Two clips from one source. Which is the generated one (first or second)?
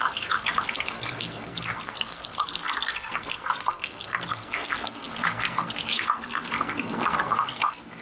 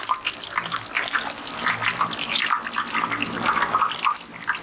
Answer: first